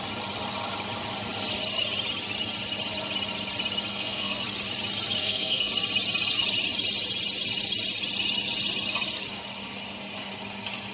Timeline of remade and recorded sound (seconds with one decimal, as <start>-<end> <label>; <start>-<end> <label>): 0.0-3.9 recorded; 3.9-4.4 remade; 4.4-5.2 recorded; 5.2-5.7 remade; 5.7-10.9 recorded